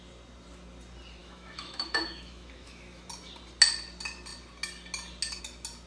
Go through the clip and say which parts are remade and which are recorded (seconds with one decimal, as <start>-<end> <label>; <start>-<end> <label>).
0.0-1.2 recorded; 1.2-3.1 remade; 3.1-5.9 recorded